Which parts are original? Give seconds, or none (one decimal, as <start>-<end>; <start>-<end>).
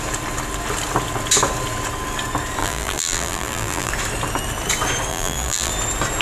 0.0-2.6; 3.9-5.1; 5.7-6.2